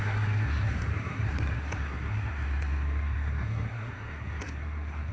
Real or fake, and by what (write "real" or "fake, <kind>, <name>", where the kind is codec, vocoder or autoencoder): fake, codec, SNAC